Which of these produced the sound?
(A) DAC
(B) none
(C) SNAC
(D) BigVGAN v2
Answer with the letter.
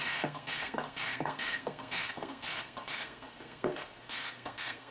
C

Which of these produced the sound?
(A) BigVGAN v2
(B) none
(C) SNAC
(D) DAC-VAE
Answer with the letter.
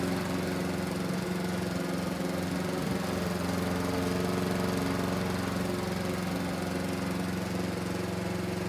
B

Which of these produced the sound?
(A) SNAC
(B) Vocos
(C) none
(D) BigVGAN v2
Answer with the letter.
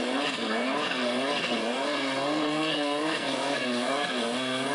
A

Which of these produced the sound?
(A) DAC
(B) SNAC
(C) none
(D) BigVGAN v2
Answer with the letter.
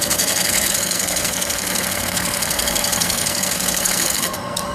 B